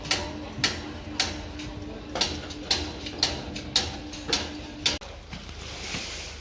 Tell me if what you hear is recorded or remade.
recorded